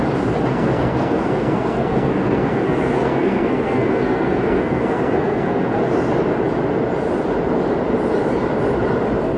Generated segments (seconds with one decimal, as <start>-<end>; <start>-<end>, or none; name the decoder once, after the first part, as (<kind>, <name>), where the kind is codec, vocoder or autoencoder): 0.5-5.8 (codec, SNAC)